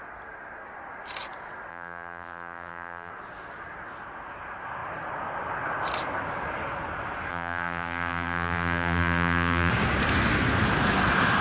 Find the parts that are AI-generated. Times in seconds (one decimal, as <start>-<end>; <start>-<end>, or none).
1.7-3.1; 7.3-9.7